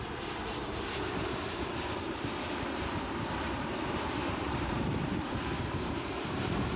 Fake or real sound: fake